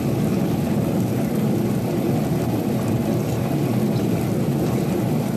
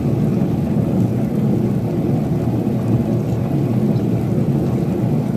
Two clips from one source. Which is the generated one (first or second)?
first